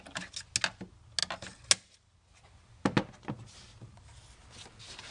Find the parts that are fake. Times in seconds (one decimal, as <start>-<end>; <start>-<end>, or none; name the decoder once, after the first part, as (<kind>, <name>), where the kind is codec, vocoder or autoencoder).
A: none